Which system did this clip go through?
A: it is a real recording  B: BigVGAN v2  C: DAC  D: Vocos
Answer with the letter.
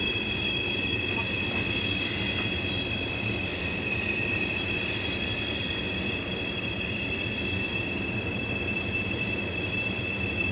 B